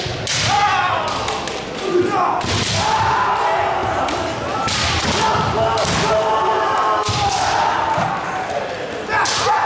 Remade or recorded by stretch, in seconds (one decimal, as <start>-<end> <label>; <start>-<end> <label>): 0.0-9.7 recorded